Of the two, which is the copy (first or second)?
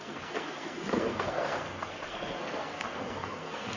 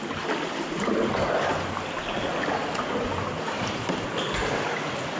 first